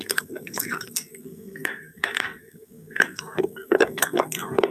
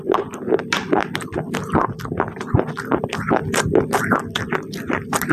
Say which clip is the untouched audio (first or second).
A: second